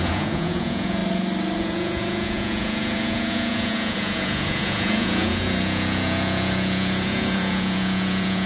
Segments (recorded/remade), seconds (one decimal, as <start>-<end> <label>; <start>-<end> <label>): 0.0-1.0 remade; 1.0-1.6 recorded; 1.6-8.5 remade